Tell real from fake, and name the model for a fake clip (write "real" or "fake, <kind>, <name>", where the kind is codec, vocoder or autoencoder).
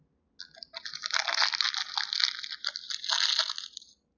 real